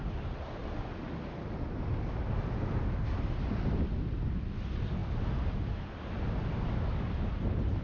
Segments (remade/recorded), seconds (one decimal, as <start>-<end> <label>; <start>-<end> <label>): 0.0-7.8 recorded